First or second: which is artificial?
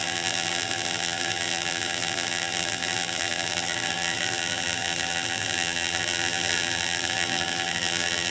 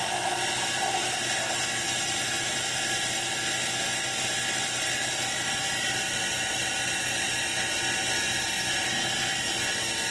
first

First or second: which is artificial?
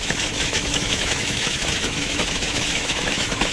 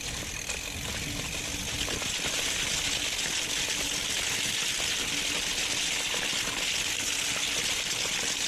first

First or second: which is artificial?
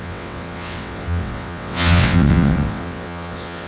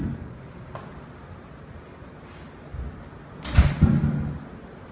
first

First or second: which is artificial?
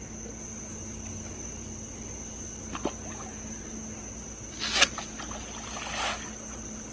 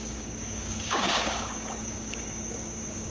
second